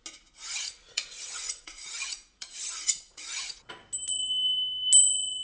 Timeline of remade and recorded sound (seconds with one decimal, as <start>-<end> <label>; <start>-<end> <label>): 0.0-0.8 recorded; 0.8-3.7 remade; 3.7-5.4 recorded